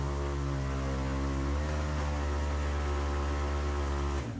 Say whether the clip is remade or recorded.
recorded